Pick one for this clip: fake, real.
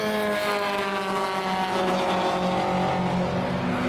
real